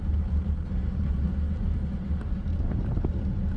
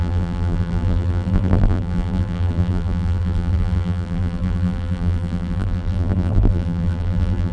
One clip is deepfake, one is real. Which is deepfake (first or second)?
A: second